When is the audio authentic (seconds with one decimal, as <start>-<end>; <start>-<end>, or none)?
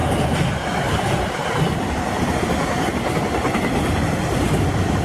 0.0-5.0